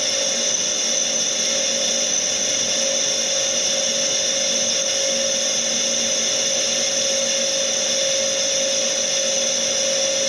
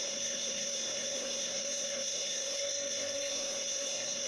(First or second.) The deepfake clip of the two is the second